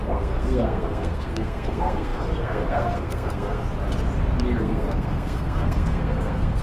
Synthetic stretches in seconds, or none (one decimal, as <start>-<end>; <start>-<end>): 0.0-3.6; 4.6-6.6

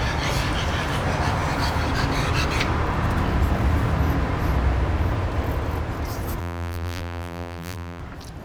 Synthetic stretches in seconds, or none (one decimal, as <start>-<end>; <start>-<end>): 6.4-8.0

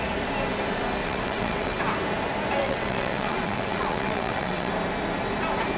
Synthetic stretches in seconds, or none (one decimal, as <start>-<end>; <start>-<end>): 1.0-1.8; 2.6-4.7

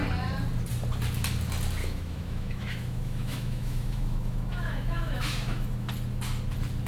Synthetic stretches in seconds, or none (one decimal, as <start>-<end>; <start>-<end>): 1.8-5.9